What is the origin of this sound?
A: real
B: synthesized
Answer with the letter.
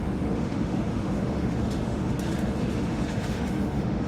B